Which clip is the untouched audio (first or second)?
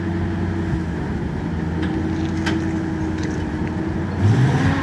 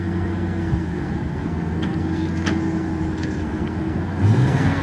first